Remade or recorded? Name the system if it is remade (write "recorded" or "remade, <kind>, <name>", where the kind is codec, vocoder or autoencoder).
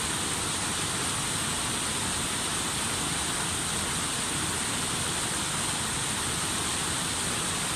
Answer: recorded